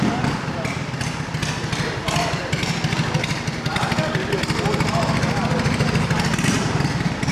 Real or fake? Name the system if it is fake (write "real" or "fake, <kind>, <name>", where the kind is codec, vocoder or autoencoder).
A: real